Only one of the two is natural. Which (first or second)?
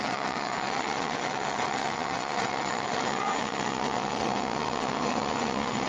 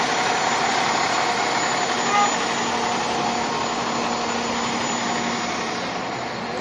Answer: second